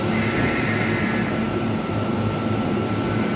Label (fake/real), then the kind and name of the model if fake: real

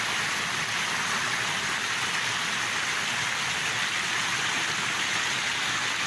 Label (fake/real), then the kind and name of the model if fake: real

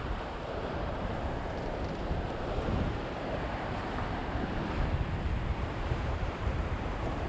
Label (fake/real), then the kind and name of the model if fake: fake, vocoder, BigVGAN v2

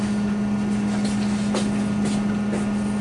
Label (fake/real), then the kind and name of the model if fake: real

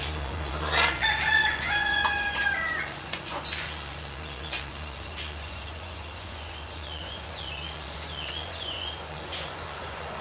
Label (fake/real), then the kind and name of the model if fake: fake, vocoder, Vocos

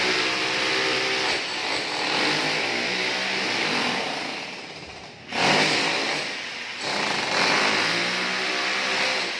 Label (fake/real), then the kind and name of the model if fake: real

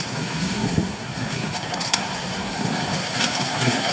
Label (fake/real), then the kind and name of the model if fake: fake, codec, SNAC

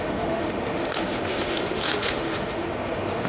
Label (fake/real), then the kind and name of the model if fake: fake, autoencoder, DAC-VAE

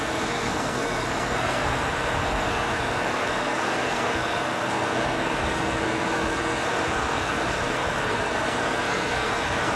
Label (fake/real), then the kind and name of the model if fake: fake, codec, SNAC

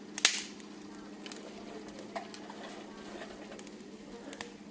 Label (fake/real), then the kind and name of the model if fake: real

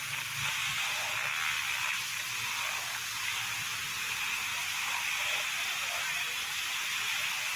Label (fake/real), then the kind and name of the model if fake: real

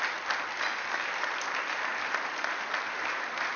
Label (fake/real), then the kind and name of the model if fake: real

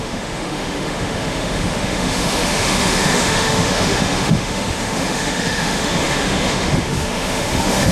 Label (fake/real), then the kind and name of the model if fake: fake, autoencoder, DAC-VAE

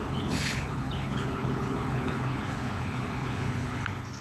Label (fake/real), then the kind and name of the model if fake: fake, codec, HILCodec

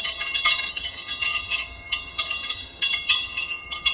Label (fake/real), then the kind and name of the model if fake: fake, vocoder, HiFi-GAN